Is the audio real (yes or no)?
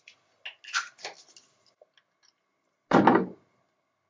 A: yes